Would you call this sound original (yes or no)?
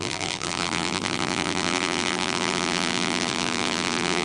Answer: no